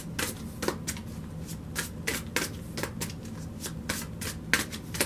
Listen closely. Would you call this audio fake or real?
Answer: real